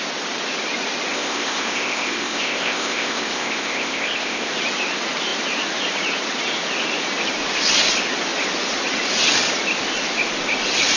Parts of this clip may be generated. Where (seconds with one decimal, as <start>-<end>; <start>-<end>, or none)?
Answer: 1.1-4.5